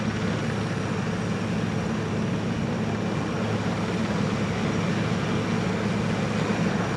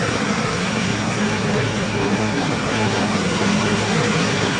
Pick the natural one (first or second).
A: first